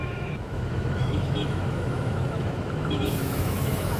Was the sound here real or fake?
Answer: fake